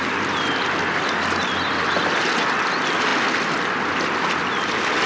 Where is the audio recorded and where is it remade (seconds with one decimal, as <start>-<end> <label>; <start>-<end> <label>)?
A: 0.0-5.1 recorded